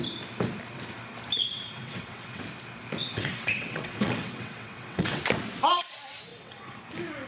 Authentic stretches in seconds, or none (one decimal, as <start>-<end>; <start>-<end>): 0.0-1.4; 2.4-3.0; 5.2-6.3; 6.8-7.3